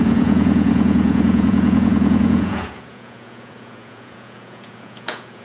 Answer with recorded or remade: remade